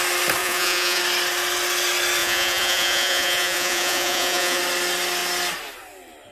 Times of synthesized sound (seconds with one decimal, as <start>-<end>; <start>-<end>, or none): 0.4-1.0; 2.2-4.6

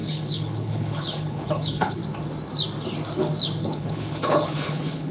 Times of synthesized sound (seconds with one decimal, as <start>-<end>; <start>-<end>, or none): 0.0-2.0; 3.6-5.1

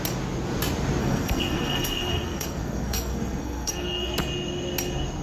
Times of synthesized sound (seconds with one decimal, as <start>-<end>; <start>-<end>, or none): 1.0-4.1

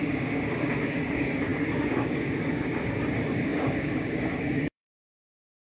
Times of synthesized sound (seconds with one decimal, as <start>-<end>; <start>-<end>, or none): 0.0-5.8

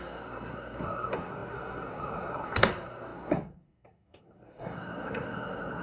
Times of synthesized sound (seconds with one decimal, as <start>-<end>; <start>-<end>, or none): 0.0-5.8

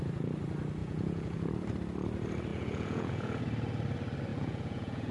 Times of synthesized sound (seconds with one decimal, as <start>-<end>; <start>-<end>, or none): 0.8-1.5; 2.5-3.4; 4.3-5.1